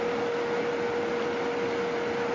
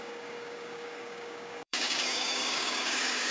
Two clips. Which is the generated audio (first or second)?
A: second